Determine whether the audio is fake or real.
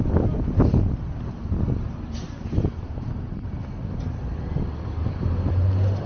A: real